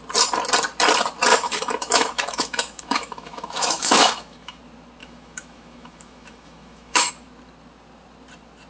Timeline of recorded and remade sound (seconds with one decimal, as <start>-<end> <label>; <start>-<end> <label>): 0.0-1.3 recorded; 1.3-4.6 remade; 4.6-5.0 recorded; 5.0-7.1 remade; 7.1-8.7 recorded